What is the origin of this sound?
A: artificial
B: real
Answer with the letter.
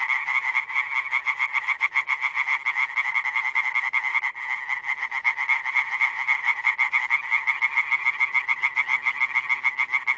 B